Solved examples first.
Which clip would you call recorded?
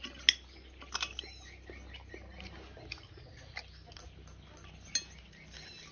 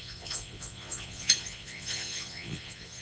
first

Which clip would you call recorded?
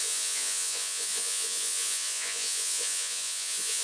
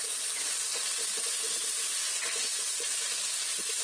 second